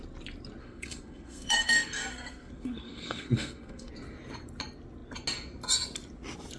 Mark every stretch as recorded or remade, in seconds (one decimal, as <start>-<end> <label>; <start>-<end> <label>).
0.0-0.6 recorded; 0.6-3.9 remade; 3.9-6.6 recorded